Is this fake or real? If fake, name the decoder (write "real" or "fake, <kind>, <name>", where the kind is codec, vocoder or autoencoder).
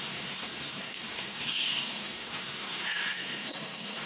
fake, codec, SNAC